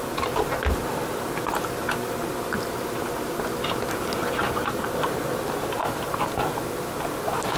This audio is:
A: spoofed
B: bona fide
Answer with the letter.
B